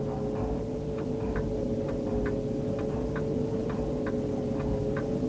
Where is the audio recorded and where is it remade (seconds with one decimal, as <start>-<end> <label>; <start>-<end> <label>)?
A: 0.0-5.3 recorded